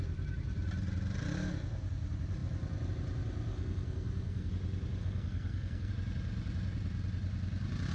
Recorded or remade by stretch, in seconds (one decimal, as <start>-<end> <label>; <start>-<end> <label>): 0.0-3.5 recorded; 3.5-4.5 remade; 4.5-5.0 recorded; 5.0-5.9 remade; 5.9-7.9 recorded

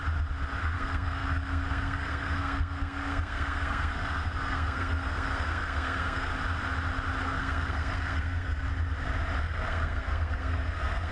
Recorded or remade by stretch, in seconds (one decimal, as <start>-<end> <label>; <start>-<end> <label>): 0.0-0.6 recorded; 0.6-6.3 remade; 6.3-7.2 recorded; 7.2-8.7 remade; 8.7-9.4 recorded; 9.4-11.1 remade

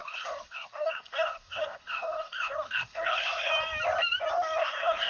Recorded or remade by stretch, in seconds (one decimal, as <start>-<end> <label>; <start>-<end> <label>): 0.0-3.5 remade; 3.5-4.6 recorded; 4.6-5.1 remade

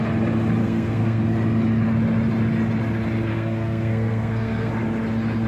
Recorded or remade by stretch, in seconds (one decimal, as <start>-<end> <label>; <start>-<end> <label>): 0.0-0.6 recorded; 0.6-1.2 remade; 1.2-3.3 recorded; 3.3-4.7 remade; 4.7-5.5 recorded

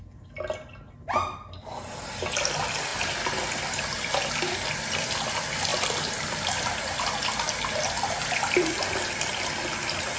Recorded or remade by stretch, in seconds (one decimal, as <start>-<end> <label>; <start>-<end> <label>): 0.0-10.2 recorded

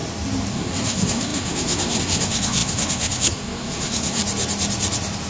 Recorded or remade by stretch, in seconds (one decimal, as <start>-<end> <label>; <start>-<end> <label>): 0.0-0.5 recorded; 0.5-4.2 remade; 4.2-5.3 recorded

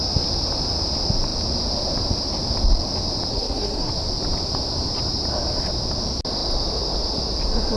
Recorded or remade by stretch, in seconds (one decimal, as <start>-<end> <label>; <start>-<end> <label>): 0.0-3.3 recorded; 3.3-3.9 remade; 3.9-7.8 recorded

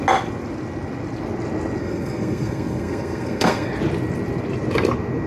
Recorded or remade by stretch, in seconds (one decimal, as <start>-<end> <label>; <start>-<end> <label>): 0.0-1.8 recorded; 1.8-3.7 remade; 3.7-5.3 recorded